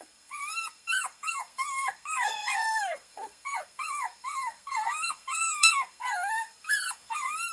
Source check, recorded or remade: remade